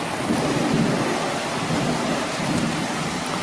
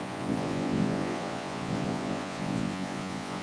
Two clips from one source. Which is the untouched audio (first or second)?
first